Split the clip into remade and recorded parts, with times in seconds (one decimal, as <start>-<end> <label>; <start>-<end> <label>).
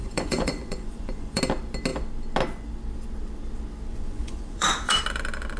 0.0-1.4 remade; 1.4-3.9 recorded; 3.9-5.0 remade; 5.0-5.6 recorded